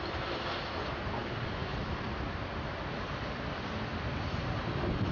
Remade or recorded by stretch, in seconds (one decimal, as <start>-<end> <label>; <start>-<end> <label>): 0.0-5.1 recorded